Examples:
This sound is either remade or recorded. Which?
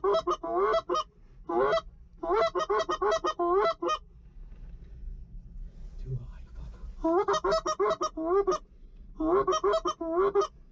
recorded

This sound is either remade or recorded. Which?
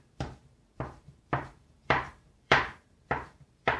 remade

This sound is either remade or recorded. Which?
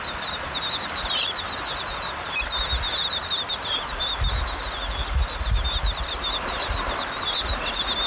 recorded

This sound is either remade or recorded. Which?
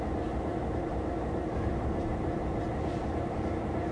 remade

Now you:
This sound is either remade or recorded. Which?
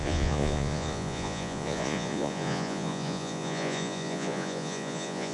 remade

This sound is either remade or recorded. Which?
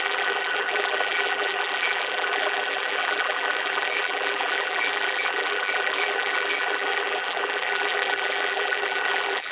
remade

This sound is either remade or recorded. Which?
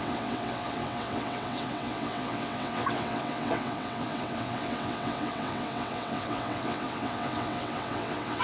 remade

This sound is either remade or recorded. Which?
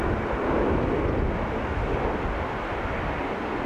recorded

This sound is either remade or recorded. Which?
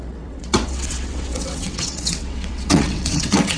remade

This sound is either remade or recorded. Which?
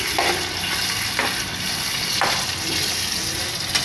recorded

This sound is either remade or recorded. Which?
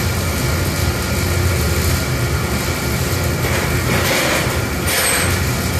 recorded